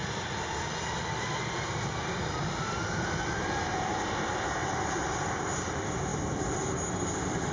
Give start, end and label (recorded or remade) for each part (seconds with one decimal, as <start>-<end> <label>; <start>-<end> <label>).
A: 0.0-0.6 remade; 0.6-1.0 recorded; 1.0-5.0 remade; 5.0-7.5 recorded